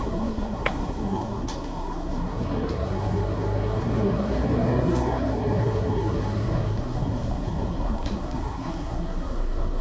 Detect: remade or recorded remade